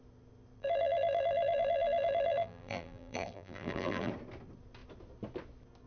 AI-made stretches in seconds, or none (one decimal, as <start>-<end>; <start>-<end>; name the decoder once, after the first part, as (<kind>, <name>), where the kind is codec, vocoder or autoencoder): 0.6-4.1 (vocoder, BigVGAN v2)